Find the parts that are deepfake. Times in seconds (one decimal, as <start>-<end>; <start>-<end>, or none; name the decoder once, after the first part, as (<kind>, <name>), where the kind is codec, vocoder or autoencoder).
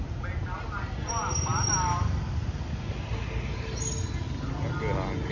none